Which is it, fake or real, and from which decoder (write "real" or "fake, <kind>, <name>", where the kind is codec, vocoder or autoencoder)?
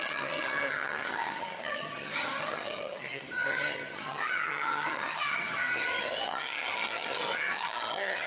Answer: fake, vocoder, HiFi-GAN